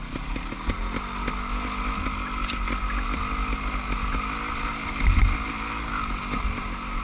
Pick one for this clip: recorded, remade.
recorded